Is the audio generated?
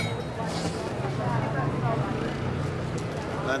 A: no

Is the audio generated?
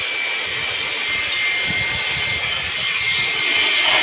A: no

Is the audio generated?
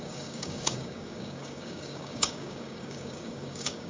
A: yes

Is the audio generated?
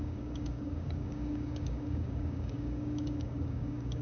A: yes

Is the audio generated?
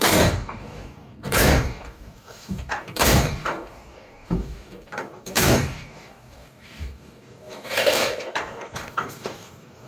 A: yes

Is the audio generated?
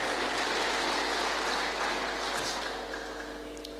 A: no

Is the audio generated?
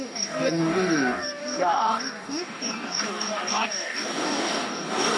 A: yes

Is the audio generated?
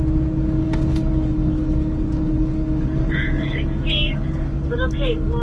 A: yes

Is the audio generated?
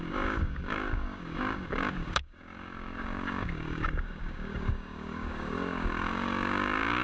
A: yes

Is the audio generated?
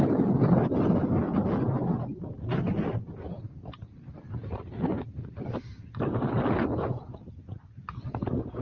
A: no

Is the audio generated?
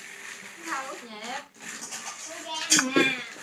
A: no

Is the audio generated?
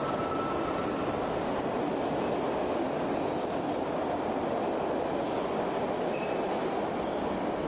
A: no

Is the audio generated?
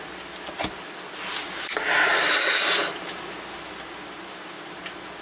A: no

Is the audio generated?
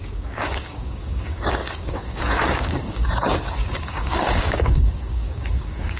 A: yes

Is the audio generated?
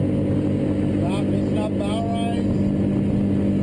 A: no